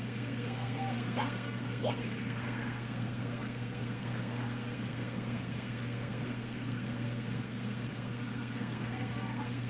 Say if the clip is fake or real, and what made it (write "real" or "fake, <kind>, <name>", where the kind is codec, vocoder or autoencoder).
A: fake, codec, SNAC